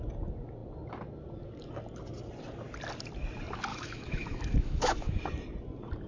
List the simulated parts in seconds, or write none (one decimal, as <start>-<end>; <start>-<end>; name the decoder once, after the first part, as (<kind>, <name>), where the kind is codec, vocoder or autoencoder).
3.7-5.2 (autoencoder, DAC-VAE)